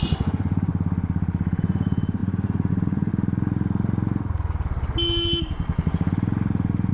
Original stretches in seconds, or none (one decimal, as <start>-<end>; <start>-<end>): 0.7-1.6; 3.1-6.9